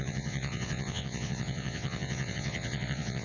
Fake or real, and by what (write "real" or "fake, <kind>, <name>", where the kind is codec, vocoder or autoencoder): fake, vocoder, WaveNeXt